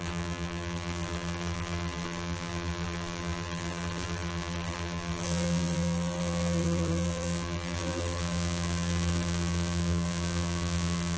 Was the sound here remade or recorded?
remade